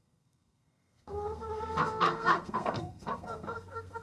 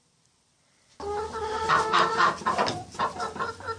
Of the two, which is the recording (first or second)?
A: second